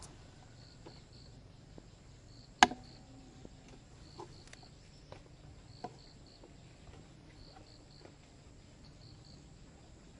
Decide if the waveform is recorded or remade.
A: recorded